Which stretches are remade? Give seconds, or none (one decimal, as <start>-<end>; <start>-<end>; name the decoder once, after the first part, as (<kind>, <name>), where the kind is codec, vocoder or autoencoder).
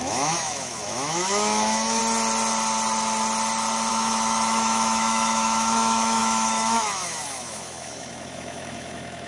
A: 0.0-2.0 (autoencoder, DAC-VAE); 3.9-9.3